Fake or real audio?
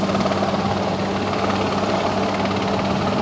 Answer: real